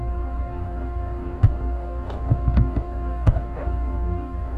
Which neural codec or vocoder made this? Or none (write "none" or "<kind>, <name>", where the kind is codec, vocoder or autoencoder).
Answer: codec, DAC